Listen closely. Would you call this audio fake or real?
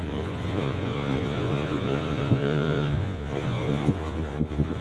fake